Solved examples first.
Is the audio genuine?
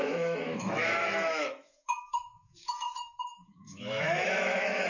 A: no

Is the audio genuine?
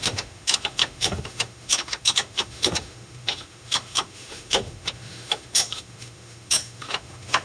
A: no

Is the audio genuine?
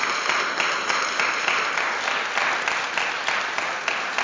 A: yes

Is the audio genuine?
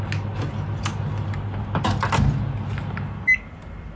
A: yes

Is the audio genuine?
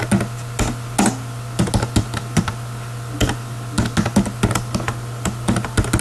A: yes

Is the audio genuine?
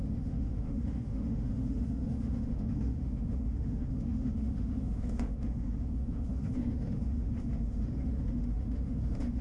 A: no